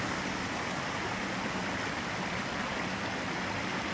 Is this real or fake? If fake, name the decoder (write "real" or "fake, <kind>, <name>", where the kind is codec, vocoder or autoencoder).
real